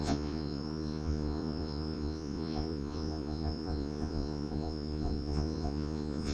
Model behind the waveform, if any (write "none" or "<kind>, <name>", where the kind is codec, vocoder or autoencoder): vocoder, Vocos